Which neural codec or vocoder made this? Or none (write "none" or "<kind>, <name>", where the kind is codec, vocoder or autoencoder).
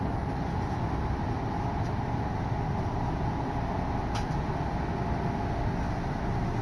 none